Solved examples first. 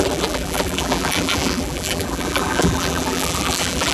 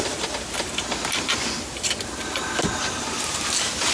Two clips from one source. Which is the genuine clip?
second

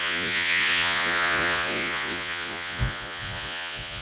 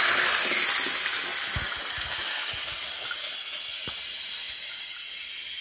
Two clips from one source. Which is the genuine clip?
second